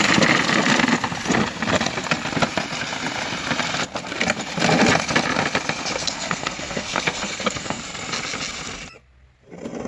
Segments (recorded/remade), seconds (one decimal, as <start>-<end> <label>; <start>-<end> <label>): 0.0-6.0 recorded; 6.0-7.8 remade; 7.8-9.9 recorded

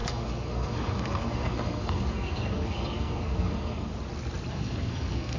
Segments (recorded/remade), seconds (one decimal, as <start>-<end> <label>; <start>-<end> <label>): 0.0-3.9 remade; 3.9-4.5 recorded; 4.5-5.4 remade

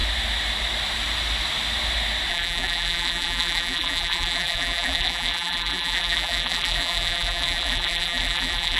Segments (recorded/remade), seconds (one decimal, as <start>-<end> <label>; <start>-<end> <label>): 0.0-2.3 recorded; 2.3-8.8 remade

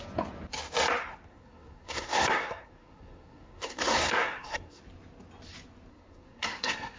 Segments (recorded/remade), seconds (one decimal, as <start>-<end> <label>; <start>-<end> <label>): 0.0-1.3 recorded; 1.3-4.8 remade; 4.8-5.9 recorded; 5.9-7.0 remade

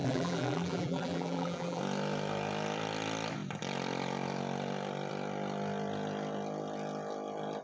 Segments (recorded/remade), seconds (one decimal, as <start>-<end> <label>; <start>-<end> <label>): 0.0-1.8 remade; 1.8-7.6 recorded

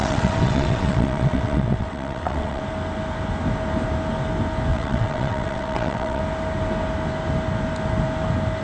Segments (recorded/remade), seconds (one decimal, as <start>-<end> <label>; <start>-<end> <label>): 0.0-2.6 remade; 2.6-4.7 recorded; 4.7-6.2 remade; 6.2-8.6 recorded

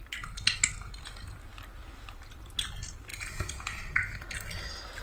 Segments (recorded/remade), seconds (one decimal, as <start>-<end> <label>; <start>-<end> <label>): 0.0-1.5 recorded; 1.5-2.5 remade; 2.5-5.0 recorded